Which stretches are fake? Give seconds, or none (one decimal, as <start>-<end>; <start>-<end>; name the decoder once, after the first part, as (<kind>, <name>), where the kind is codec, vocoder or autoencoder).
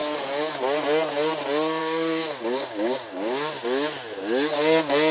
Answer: 1.8-3.5 (codec, DAC)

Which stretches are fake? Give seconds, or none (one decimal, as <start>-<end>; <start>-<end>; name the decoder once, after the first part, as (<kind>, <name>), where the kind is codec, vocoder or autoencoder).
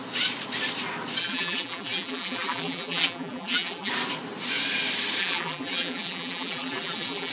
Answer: 1.2-3.9 (vocoder, BigVGAN v2); 5.2-7.3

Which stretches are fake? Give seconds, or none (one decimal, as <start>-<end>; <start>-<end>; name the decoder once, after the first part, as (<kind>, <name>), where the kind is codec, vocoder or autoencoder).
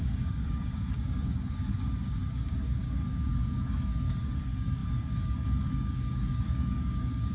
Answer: 0.0-7.3 (codec, DAC)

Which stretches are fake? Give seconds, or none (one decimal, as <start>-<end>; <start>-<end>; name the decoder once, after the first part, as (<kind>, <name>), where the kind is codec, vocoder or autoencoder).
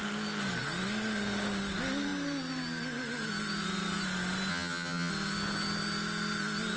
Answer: 4.5-5.1 (vocoder, HiFi-GAN)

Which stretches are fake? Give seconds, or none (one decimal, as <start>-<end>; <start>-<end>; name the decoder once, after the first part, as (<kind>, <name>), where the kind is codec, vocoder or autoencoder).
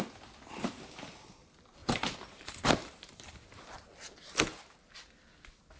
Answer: 1.8-3.3 (vocoder, BigVGAN v2)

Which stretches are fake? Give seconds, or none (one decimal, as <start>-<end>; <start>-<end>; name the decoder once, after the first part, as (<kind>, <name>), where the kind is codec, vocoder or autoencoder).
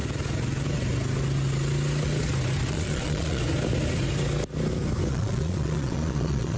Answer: 2.7-3.4 (vocoder, Vocos); 5.1-6.6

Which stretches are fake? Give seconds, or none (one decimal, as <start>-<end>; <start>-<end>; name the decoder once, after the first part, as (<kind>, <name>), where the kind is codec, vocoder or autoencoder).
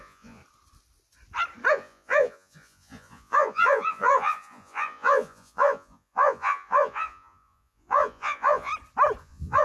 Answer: 0.0-0.4 (vocoder, Vocos); 1.7-8.7; 9.2-9.6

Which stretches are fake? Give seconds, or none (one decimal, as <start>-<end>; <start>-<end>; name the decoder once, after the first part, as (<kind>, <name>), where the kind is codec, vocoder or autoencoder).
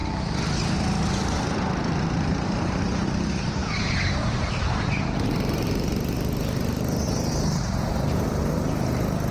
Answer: 1.9-9.3 (vocoder, BigVGAN v2)